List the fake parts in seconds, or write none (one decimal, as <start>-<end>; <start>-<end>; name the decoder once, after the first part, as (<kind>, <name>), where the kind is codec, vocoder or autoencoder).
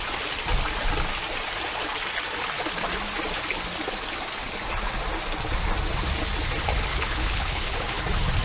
6.9-8.0 (codec, HILCodec)